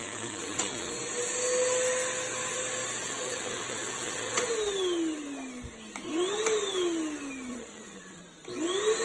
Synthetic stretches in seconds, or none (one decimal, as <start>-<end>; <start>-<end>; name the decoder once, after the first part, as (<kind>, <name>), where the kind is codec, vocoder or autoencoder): 0.0-0.9 (vocoder, WaveNeXt); 3.0-4.4; 7.5-8.2